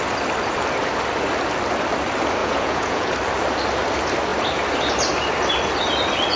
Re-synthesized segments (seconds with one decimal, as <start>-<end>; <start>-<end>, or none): 2.4-3.1